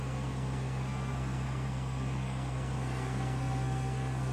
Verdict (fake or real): fake